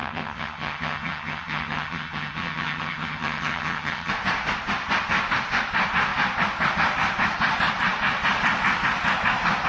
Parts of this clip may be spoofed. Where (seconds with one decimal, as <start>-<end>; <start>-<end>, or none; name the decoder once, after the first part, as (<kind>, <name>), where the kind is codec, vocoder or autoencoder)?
0.0-4.1 (vocoder, HiFi-GAN)